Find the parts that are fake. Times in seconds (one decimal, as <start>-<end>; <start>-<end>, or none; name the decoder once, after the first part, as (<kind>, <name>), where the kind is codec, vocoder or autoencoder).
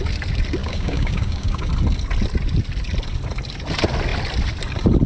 0.6-1.7 (codec, DAC)